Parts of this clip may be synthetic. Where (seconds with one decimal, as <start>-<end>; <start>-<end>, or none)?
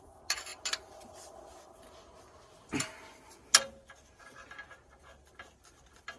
none